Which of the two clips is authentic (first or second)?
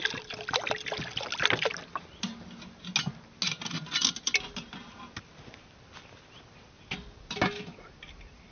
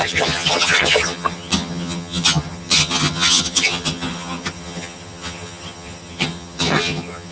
first